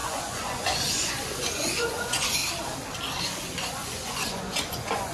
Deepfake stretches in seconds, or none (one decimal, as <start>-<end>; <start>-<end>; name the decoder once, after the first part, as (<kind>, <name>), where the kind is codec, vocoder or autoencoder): 0.0-2.4 (vocoder, Vocos); 3.2-5.1